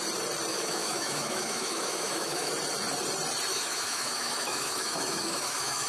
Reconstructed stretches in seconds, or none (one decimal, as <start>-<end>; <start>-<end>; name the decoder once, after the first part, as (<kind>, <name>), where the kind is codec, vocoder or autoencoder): 0.5-2.5 (autoencoder, DAC-VAE); 3.5-5.9

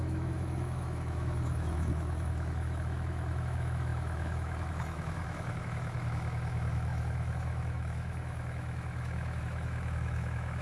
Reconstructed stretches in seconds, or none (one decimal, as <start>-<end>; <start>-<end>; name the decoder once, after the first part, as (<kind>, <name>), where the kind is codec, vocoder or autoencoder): 0.0-10.6 (autoencoder, DAC-VAE)

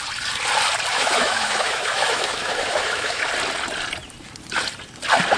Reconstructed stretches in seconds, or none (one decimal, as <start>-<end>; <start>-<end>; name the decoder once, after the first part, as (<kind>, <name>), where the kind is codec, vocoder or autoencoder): 0.9-3.3 (autoencoder, DAC-VAE)

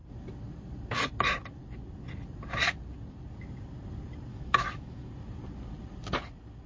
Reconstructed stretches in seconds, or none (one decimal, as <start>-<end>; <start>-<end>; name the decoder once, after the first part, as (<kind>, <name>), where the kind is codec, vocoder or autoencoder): 4.3-5.1 (autoencoder, DAC-VAE)